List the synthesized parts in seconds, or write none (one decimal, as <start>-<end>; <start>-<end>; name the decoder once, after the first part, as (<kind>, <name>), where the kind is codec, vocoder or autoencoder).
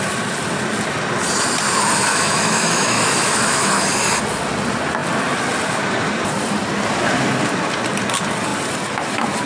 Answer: 2.1-3.8 (autoencoder, DAC-VAE)